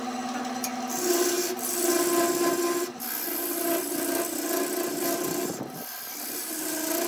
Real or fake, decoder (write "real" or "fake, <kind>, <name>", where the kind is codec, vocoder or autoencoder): real